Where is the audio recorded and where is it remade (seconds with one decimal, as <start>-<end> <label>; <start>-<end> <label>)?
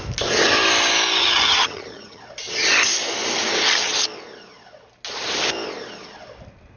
0.0-1.2 recorded; 1.2-2.2 remade; 2.2-6.8 recorded